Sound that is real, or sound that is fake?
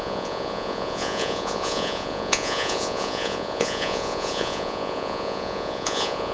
fake